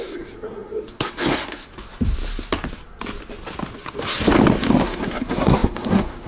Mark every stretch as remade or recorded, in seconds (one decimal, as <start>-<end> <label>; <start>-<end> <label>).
0.0-1.7 remade; 1.7-4.8 recorded; 4.8-6.3 remade